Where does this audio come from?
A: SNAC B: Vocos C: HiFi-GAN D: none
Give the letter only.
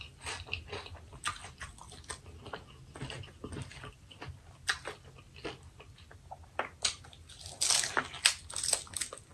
D